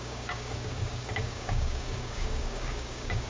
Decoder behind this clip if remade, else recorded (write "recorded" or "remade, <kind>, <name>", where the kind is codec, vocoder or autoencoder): remade, codec, DAC